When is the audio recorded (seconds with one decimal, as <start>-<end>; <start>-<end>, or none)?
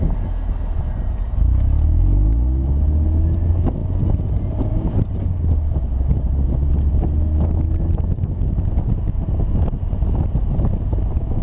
0.0-11.4